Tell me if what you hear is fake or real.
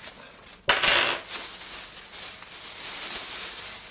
real